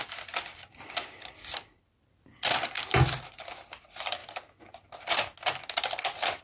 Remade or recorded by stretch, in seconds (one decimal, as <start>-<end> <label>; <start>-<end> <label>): 0.0-4.2 remade; 4.2-6.4 recorded